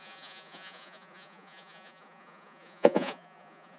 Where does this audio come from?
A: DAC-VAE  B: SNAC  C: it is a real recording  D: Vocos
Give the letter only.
D